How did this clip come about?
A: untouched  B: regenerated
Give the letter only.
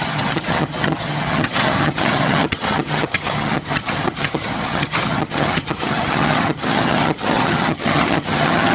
B